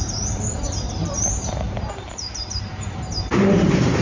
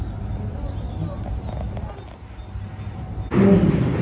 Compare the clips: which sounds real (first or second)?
second